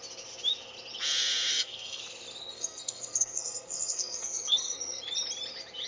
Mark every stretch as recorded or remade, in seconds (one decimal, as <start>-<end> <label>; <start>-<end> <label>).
0.0-1.5 recorded; 1.5-2.0 remade; 2.0-2.5 recorded; 2.5-5.0 remade; 5.0-5.9 recorded